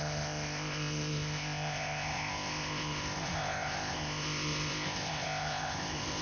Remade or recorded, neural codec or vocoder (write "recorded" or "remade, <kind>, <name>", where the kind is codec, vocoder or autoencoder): remade, codec, ZipCodec